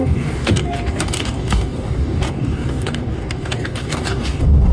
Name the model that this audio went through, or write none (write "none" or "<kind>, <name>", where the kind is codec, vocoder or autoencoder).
codec, DAC